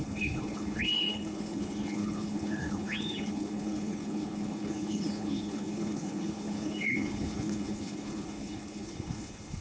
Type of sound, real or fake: fake